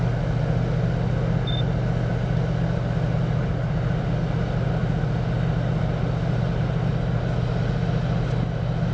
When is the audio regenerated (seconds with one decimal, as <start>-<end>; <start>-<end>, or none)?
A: none

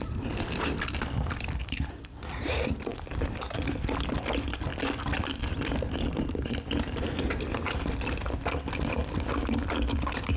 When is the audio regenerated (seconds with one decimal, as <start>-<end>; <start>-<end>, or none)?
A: 0.0-2.9; 3.6-4.7; 8.9-10.4